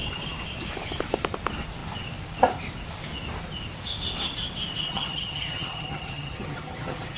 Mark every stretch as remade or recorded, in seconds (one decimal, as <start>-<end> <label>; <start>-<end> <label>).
0.0-4.8 recorded; 4.8-7.2 remade